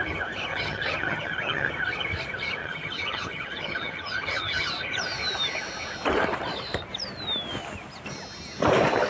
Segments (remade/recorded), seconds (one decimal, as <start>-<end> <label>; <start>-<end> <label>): 0.0-0.5 recorded; 0.5-1.7 remade; 1.7-2.6 recorded; 2.6-4.7 remade; 4.7-9.1 recorded